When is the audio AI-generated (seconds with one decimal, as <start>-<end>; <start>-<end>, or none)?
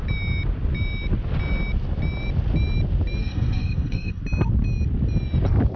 3.2-4.2